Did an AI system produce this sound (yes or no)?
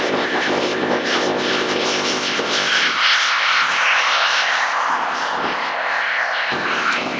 yes